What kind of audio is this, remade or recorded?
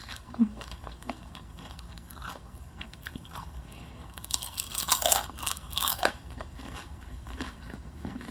remade